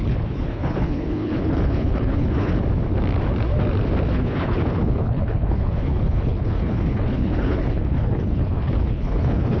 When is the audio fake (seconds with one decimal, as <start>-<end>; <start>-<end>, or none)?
0.0-2.5; 4.1-9.6